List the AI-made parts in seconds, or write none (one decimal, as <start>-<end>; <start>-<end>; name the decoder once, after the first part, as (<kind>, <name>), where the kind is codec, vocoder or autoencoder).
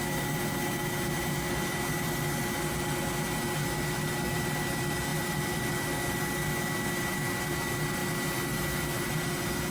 none